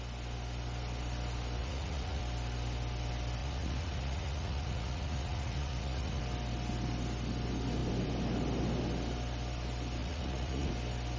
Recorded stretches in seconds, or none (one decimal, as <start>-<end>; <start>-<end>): 0.0-1.6; 2.2-3.4; 6.2-10.0; 10.7-11.2